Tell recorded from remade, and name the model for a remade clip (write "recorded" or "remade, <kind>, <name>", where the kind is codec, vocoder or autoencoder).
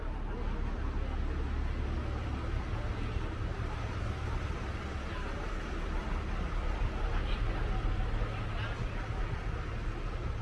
recorded